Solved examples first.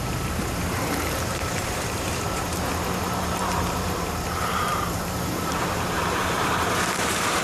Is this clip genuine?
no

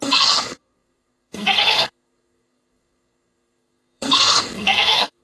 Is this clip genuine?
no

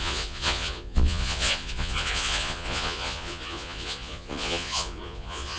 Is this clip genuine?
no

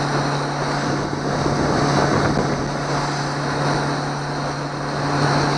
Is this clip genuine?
yes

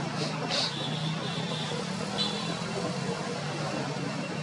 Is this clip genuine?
yes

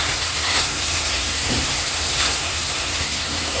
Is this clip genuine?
no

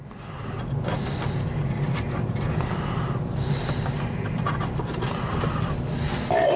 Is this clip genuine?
yes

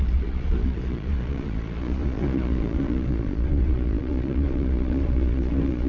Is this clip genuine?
no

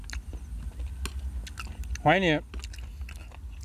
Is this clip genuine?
yes